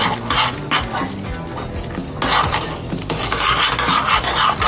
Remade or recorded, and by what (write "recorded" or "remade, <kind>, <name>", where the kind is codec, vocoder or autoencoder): recorded